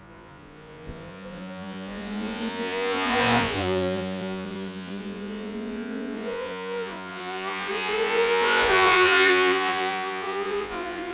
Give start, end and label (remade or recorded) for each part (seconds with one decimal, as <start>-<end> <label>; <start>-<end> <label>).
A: 0.0-11.1 remade